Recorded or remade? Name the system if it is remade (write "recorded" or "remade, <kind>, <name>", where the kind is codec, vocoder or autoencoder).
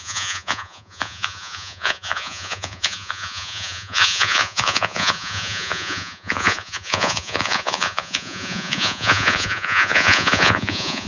remade, vocoder, Vocos